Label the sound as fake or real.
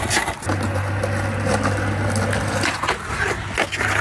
real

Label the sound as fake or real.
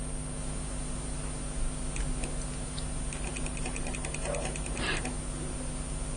real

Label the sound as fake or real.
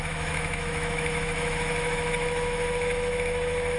fake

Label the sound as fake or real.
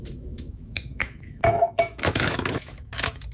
fake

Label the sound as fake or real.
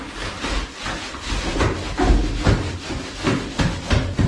real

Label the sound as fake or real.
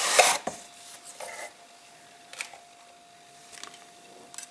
real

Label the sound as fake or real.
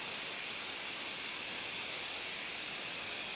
real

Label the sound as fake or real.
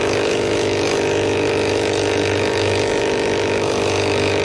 fake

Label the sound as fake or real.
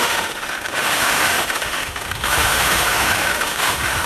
fake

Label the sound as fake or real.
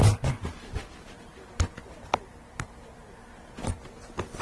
real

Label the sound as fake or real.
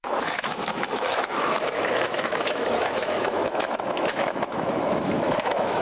fake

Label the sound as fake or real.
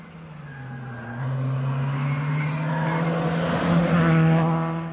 real